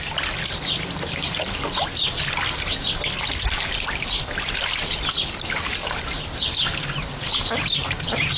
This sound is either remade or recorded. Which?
recorded